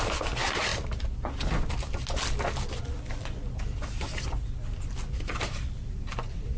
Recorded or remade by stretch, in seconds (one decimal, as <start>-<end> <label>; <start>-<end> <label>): 0.0-0.7 remade; 0.7-2.8 recorded; 2.8-6.6 remade